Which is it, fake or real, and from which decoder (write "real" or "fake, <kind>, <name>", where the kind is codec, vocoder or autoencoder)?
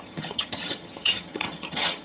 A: fake, vocoder, HiFi-GAN